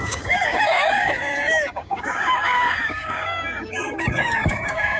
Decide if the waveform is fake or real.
fake